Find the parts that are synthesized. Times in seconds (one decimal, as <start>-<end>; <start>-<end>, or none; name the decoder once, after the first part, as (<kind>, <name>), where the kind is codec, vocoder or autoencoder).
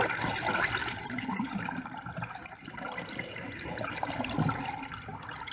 0.8-4.1 (vocoder, BigVGAN v2)